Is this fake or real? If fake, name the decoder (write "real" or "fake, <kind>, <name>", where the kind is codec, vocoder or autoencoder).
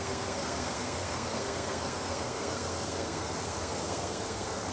fake, codec, SNAC